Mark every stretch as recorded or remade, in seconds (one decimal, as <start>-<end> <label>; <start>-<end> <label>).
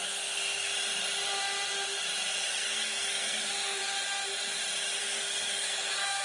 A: 0.0-0.7 remade; 0.7-2.4 recorded; 2.4-3.8 remade; 3.8-5.0 recorded; 5.0-6.2 remade